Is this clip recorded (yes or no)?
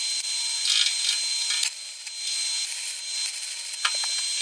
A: yes